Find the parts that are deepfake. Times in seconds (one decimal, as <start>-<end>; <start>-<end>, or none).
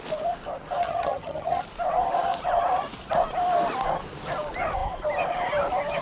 0.8-1.6